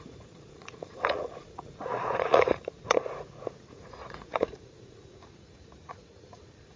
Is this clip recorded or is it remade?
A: remade